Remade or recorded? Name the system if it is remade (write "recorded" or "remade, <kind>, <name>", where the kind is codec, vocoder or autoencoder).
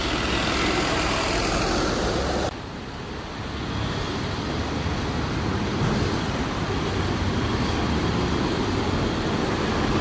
recorded